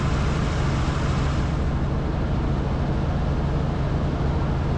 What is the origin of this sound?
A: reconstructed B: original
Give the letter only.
B